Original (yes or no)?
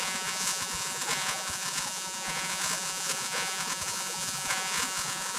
no